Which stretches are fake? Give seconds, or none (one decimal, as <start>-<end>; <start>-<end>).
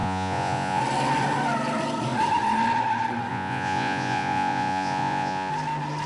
0.0-0.8; 3.3-5.5